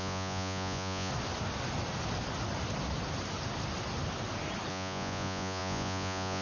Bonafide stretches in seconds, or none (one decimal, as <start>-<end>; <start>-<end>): 1.1-4.7